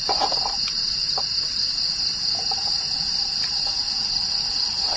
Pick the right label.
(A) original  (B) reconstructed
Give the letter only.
A